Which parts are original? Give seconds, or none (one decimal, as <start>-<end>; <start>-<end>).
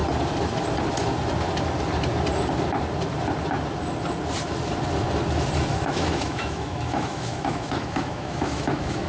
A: 0.0-5.7